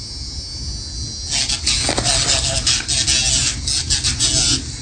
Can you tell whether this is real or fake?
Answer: real